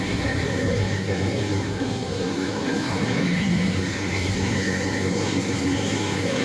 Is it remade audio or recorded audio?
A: remade